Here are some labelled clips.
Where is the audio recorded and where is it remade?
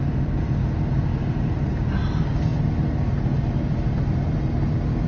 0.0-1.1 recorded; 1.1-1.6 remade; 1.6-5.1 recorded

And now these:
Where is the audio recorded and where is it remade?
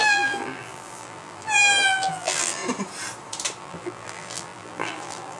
0.0-2.6 remade; 2.6-3.6 recorded; 3.6-5.4 remade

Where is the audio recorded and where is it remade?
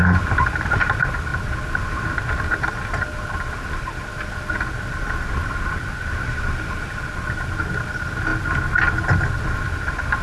0.0-1.3 recorded; 1.3-2.7 remade; 2.7-10.2 recorded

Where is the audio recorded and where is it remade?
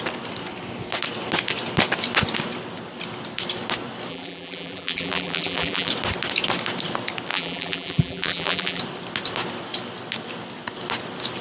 0.0-4.1 recorded; 4.1-5.9 remade; 5.9-7.3 recorded; 7.3-8.8 remade; 8.8-11.4 recorded